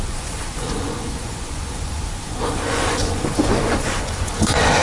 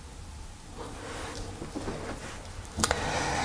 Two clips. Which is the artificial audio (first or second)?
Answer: first